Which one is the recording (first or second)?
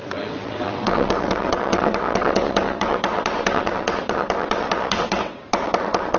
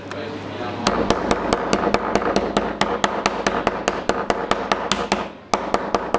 second